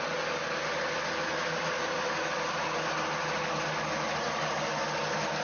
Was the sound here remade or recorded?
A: recorded